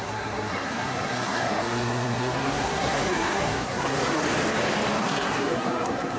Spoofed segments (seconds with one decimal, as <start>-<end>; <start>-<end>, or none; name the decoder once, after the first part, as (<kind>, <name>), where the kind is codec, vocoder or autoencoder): 0.0-4.2 (codec, SNAC); 5.0-6.2